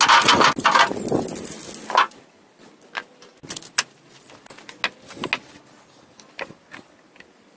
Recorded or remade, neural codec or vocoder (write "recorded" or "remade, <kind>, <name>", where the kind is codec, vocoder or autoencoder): recorded